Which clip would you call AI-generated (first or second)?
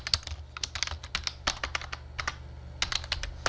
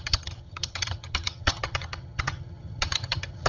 second